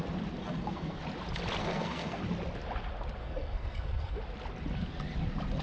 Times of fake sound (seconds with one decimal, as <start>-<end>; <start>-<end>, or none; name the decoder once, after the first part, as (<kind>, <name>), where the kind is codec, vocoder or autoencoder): 0.4-1.0 (codec, SNAC); 1.6-2.2; 3.2-4.2